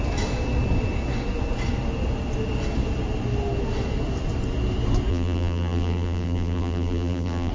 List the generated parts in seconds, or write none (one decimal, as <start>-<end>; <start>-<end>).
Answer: 5.1-7.5